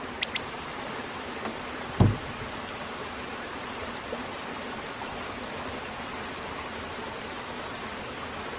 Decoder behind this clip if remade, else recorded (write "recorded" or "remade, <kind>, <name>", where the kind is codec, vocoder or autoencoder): recorded